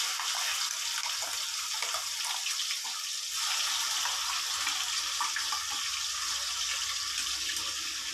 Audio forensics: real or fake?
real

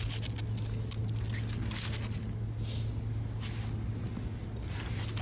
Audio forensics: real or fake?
real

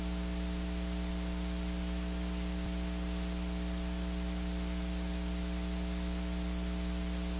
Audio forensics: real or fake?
real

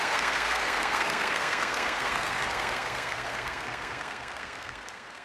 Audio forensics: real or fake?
fake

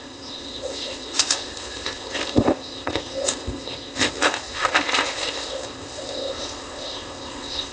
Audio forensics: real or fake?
fake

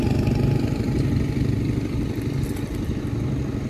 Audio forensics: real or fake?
real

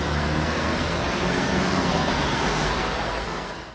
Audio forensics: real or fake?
fake